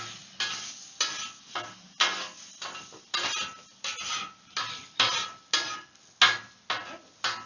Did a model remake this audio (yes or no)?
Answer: no